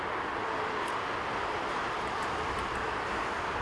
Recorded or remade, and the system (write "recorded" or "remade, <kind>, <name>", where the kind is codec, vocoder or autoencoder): recorded